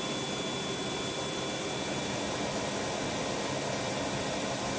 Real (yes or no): yes